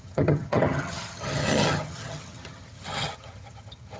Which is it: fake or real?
fake